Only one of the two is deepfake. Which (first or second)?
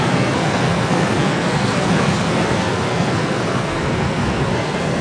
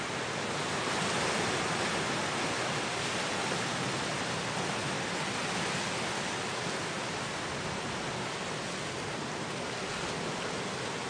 first